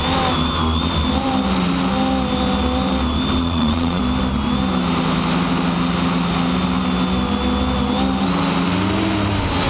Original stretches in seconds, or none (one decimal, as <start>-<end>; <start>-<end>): 0.0-3.4; 4.0-9.7